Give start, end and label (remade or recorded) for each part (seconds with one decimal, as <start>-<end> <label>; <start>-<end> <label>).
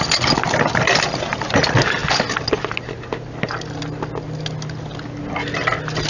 0.0-6.1 recorded